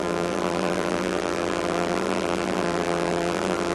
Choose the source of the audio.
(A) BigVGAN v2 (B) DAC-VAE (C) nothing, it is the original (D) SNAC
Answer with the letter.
A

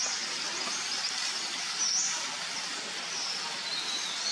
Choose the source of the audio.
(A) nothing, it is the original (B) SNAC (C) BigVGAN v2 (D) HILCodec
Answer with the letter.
A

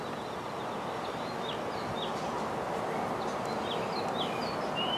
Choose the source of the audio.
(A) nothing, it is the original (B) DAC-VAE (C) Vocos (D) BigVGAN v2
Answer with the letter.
A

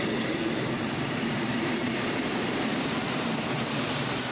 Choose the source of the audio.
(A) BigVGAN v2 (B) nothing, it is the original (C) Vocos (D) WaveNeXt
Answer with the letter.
A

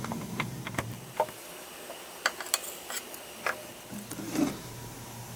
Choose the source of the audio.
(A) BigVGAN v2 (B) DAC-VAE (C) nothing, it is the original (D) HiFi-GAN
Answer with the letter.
C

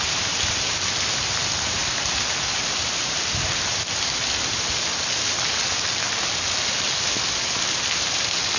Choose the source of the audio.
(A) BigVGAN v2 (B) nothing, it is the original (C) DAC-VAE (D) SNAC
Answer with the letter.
A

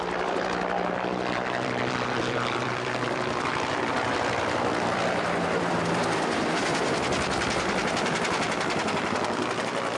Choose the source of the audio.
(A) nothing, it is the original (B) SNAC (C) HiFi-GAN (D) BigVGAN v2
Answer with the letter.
D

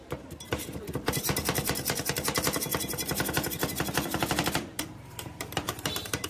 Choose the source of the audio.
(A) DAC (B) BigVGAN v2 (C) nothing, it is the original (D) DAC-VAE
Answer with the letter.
B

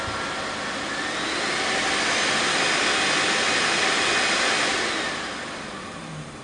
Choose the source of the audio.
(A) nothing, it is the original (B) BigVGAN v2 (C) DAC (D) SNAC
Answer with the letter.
A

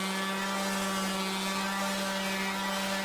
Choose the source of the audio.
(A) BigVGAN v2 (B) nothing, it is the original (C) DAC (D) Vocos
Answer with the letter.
B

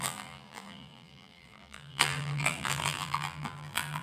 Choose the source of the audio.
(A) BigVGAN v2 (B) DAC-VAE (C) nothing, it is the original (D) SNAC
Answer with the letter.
A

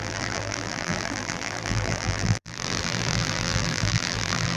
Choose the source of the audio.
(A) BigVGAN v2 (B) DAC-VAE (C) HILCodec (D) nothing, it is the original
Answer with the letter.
A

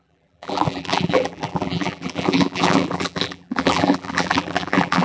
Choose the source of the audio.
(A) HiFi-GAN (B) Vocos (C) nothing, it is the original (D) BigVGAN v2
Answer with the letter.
D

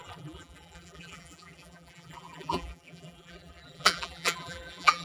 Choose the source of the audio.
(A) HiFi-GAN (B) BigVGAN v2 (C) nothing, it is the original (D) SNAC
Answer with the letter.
B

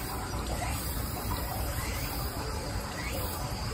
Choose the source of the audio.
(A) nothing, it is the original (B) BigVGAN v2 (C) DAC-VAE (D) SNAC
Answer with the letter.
B